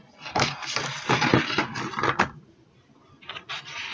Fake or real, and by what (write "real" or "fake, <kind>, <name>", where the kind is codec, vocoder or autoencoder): fake, vocoder, BigVGAN v2